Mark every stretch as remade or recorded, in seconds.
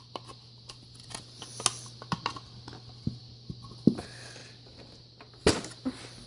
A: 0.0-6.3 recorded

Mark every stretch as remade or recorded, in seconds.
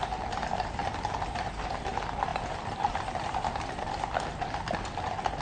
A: 0.0-0.8 recorded; 0.8-1.7 remade; 1.7-2.3 recorded; 2.3-4.0 remade; 4.0-5.4 recorded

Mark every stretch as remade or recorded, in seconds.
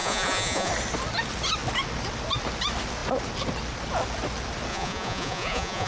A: 0.0-0.7 remade; 0.7-4.7 recorded; 4.7-5.9 remade